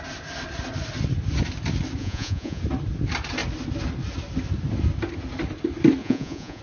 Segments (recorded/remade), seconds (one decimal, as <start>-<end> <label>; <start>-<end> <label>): 0.0-2.0 recorded; 2.0-2.6 remade; 2.6-6.0 recorded; 6.0-6.6 remade